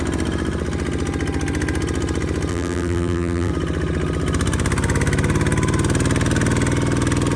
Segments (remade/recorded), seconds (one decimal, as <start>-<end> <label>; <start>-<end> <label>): 0.0-2.5 recorded; 2.5-3.5 remade; 3.5-7.4 recorded